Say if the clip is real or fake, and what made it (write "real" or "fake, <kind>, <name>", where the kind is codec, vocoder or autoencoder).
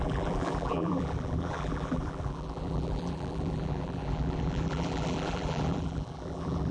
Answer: fake, vocoder, BigVGAN v2